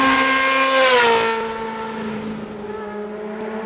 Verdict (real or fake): real